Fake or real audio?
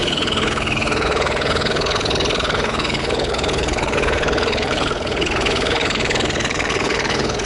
fake